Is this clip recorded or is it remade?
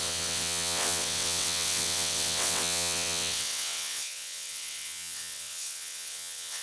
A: remade